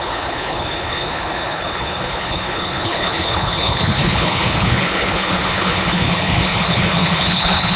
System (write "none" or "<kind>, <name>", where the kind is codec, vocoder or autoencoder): codec, HILCodec